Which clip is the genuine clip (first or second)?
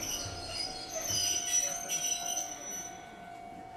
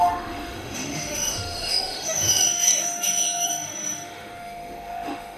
first